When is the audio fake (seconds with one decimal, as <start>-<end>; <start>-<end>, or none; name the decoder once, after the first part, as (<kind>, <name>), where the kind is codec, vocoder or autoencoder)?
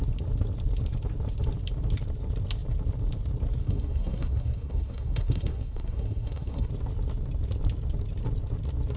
3.6-6.7 (codec, SNAC)